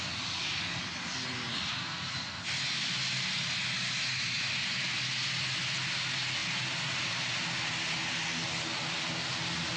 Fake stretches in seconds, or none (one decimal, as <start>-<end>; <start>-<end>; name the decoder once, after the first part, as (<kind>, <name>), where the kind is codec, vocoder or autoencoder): 1.8-2.4 (codec, SNAC)